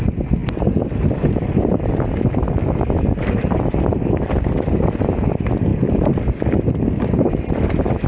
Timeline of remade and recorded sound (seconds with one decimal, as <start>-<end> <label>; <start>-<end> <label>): 0.0-8.1 recorded